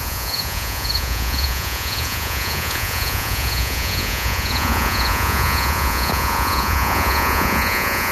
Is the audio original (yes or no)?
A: no